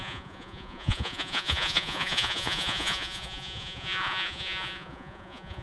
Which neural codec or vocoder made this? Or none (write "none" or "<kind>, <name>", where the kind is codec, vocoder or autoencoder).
vocoder, Vocos